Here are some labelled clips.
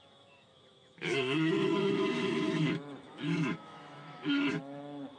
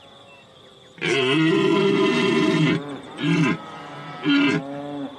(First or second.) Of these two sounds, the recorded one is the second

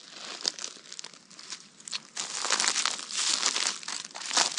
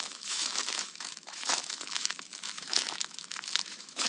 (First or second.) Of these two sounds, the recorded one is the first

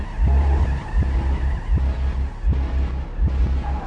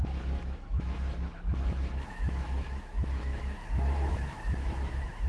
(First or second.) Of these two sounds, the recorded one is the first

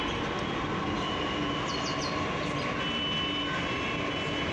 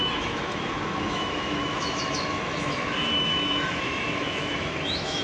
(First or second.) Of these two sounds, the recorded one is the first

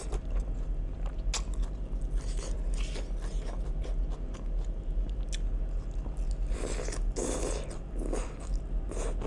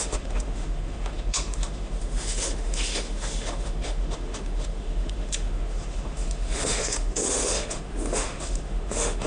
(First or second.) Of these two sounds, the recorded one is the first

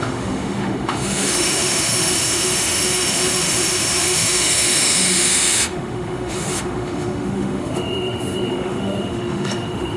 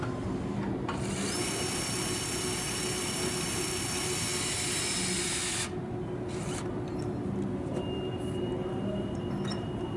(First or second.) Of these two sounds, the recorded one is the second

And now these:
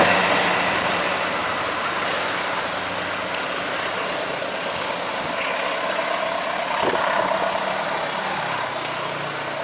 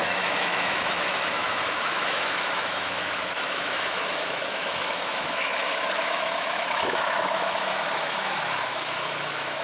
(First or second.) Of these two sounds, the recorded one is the first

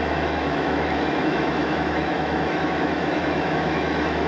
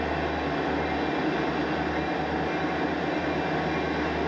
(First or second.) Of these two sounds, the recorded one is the second